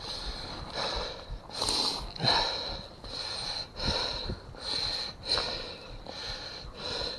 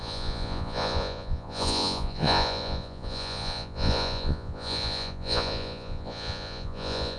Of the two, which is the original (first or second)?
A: first